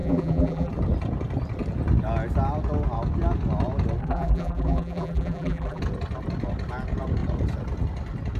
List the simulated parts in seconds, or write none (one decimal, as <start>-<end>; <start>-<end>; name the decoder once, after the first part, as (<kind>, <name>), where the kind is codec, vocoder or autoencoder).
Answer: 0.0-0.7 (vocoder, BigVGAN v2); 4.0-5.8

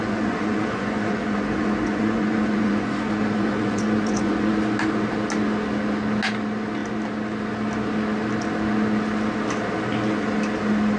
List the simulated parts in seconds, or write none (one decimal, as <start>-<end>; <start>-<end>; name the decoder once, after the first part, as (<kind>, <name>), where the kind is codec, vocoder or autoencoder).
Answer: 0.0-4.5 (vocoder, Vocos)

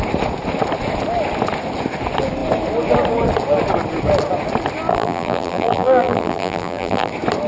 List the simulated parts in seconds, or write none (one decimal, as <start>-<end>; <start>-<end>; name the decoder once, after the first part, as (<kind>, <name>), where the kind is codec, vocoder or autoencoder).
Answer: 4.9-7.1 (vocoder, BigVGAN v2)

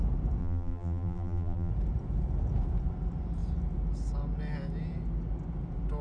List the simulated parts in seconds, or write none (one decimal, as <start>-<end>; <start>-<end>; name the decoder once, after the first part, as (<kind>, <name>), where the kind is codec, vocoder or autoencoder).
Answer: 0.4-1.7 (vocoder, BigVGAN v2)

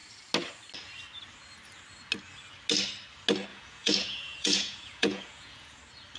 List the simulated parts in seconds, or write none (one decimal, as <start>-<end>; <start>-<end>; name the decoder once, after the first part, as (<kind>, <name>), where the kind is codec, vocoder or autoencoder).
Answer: 3.5-5.8 (vocoder, Vocos)